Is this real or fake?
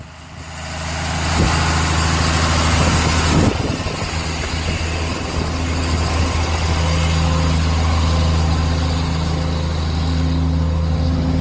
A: real